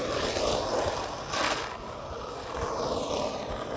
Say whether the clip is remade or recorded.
recorded